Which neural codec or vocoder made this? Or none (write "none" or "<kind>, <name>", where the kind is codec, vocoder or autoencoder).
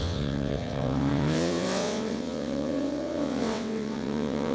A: vocoder, WaveNeXt